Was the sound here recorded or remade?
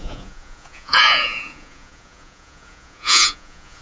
remade